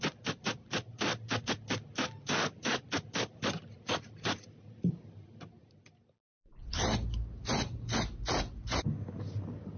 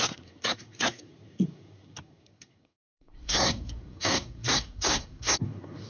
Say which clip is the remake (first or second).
second